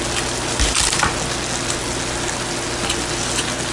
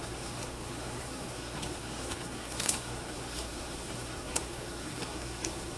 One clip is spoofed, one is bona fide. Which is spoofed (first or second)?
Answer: second